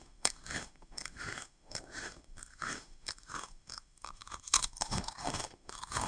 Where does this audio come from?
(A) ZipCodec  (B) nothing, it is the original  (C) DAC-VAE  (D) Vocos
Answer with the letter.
C